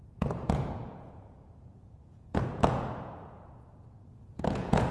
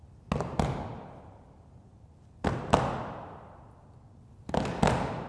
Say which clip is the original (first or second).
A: second